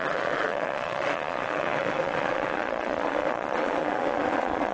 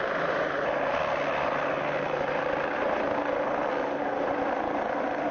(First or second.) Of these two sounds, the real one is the second